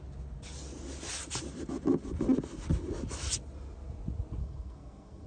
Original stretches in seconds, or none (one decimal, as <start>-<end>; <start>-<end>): 0.0-4.4